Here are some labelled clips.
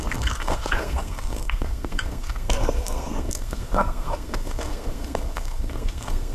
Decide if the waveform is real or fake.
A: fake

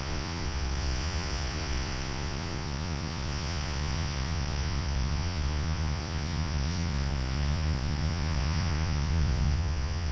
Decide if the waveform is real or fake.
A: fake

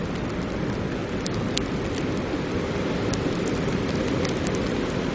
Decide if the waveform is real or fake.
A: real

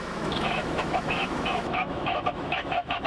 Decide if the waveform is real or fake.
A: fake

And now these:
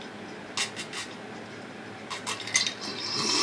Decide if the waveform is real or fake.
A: real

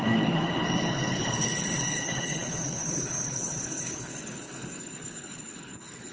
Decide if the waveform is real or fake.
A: fake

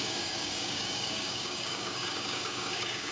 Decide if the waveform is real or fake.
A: fake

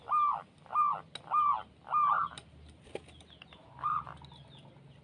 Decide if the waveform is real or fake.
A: real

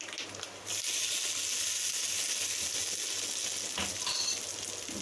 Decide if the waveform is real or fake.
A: real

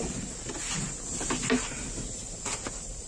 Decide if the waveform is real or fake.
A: real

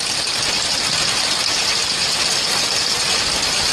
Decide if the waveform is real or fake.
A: real